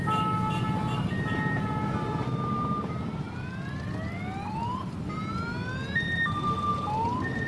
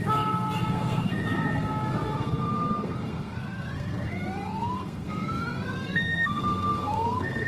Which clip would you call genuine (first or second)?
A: first